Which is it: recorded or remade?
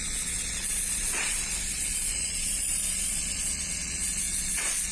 remade